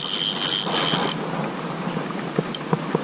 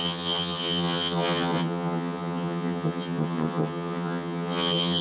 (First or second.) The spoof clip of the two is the second